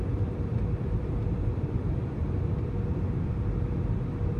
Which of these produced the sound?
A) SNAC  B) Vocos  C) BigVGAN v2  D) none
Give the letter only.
C